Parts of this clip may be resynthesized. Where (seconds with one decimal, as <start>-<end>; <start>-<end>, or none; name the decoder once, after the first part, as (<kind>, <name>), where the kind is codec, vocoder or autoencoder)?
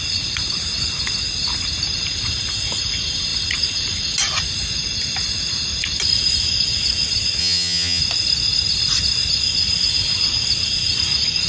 7.4-8.0 (vocoder, HiFi-GAN)